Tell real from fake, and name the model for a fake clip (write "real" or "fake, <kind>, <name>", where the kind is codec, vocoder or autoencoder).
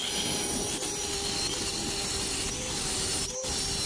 real